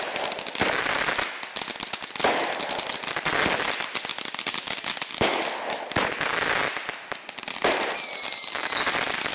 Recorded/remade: recorded